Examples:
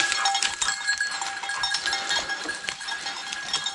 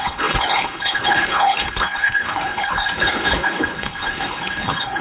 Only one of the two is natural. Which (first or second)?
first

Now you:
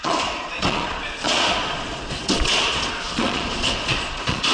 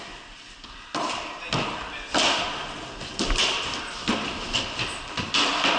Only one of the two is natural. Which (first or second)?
second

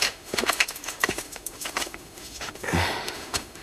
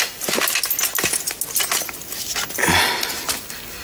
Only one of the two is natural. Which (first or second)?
second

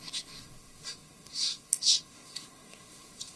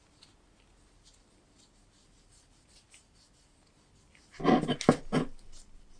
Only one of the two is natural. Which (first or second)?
second